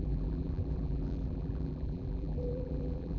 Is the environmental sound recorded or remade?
remade